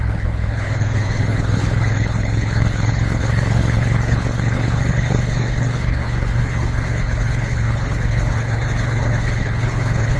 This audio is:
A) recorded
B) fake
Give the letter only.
B